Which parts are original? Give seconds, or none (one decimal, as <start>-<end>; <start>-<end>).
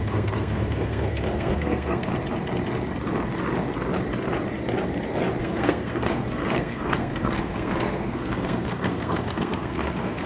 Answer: 2.1-5.4